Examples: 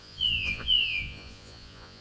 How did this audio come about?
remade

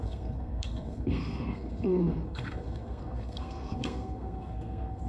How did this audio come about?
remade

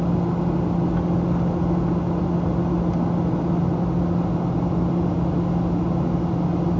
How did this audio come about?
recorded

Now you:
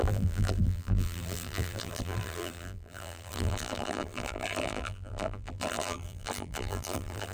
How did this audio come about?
remade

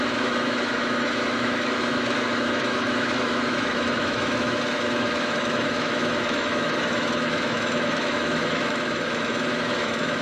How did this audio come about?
remade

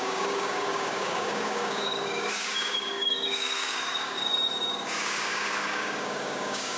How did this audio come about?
remade